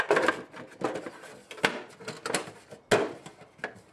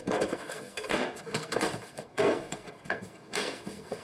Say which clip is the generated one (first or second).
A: second